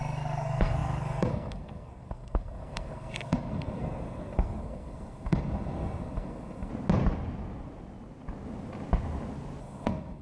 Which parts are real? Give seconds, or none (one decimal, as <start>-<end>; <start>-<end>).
6.7-9.6